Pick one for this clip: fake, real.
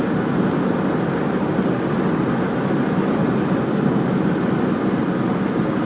real